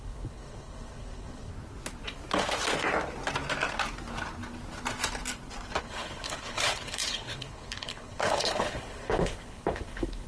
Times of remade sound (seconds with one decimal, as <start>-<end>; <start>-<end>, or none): 0.0-1.5; 5.8-10.3